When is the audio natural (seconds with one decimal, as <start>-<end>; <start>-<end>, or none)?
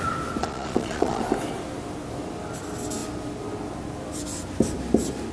0.0-0.4; 1.2-5.3